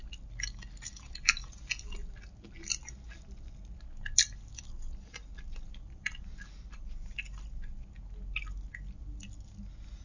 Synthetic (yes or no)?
no